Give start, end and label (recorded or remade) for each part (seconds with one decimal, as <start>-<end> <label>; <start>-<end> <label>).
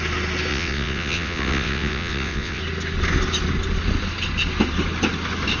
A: 0.0-0.5 recorded; 0.5-2.6 remade; 2.6-5.6 recorded